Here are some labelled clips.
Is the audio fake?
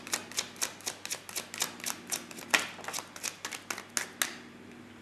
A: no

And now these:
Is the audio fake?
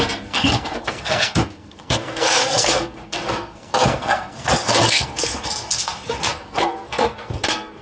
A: yes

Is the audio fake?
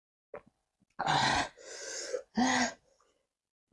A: no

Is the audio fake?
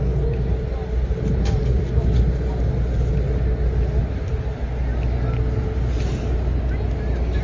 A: no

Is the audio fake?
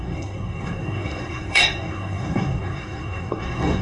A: yes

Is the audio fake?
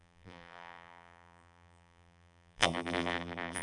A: yes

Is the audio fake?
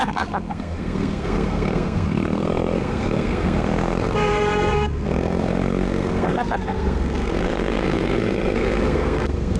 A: yes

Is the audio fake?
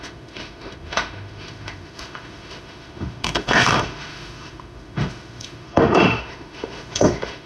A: yes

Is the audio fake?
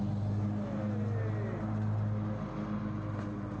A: no